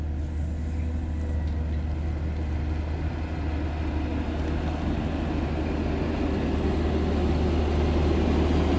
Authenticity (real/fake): real